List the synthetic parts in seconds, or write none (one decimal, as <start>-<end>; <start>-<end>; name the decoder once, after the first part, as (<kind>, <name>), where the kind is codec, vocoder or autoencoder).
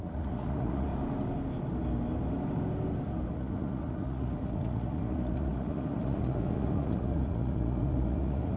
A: 0.0-0.9 (vocoder, Vocos); 3.3-8.6